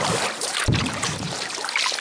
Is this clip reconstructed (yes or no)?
no